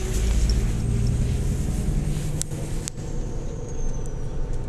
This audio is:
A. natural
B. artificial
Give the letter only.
A